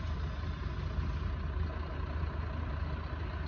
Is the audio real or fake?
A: real